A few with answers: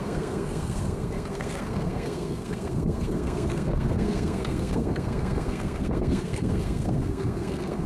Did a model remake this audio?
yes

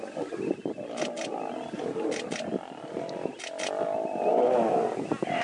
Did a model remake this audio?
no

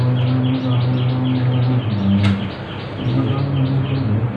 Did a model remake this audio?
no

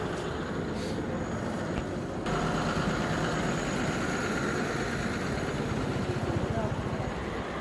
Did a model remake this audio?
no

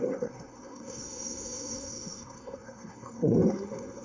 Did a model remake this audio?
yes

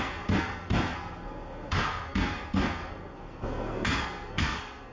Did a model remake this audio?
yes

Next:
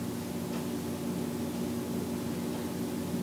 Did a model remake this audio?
no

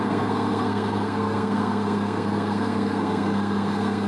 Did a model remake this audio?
yes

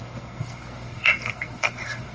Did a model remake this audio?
yes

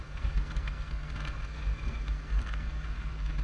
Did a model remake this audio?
yes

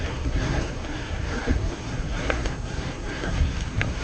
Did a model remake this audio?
yes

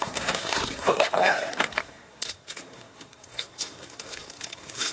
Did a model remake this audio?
yes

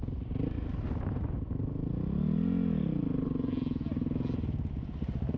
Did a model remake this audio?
no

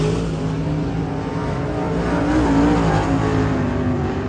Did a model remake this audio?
no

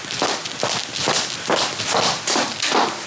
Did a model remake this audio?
no